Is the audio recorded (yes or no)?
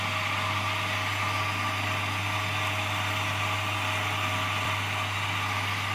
yes